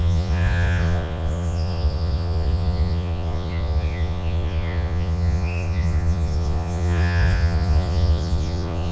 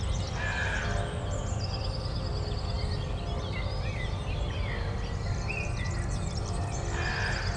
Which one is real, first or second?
second